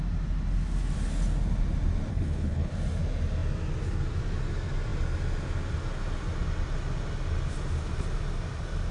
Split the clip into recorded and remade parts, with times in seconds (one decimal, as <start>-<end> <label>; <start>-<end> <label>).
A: 0.0-2.1 recorded; 2.1-2.7 remade; 2.7-8.9 recorded